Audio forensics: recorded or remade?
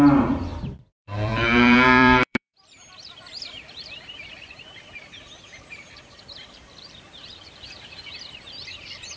remade